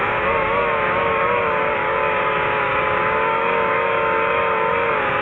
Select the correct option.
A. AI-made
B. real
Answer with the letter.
A